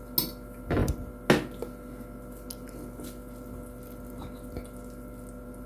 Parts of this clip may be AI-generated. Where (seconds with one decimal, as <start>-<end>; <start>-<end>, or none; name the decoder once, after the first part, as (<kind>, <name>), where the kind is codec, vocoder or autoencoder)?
none